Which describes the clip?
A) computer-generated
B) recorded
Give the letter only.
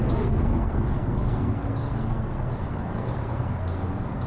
A